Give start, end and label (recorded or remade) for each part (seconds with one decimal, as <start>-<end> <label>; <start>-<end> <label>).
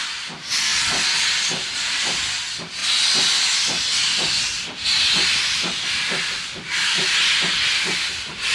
0.0-8.5 recorded